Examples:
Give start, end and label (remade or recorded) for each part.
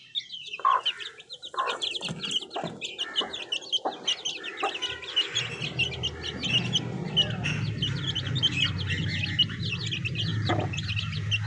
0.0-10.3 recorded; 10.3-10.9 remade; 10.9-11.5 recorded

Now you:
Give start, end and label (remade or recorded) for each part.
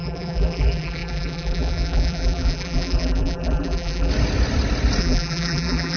0.0-4.1 remade; 4.1-5.0 recorded; 5.0-6.0 remade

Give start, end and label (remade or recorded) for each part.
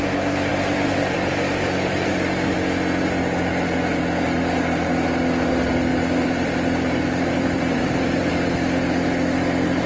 0.0-0.5 recorded; 0.5-2.1 remade; 2.1-5.9 recorded; 5.9-8.3 remade; 8.3-9.9 recorded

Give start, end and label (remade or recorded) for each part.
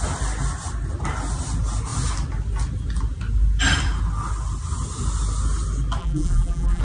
0.0-6.0 recorded; 6.0-6.8 remade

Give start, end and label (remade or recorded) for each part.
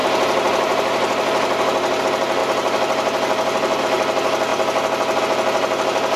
0.0-2.0 remade; 2.0-2.4 recorded; 2.4-3.8 remade; 3.8-6.2 recorded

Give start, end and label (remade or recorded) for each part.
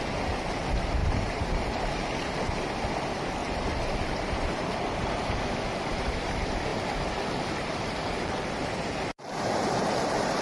0.0-1.0 recorded; 1.0-1.9 remade; 1.9-3.4 recorded; 3.4-5.4 remade; 5.4-10.4 recorded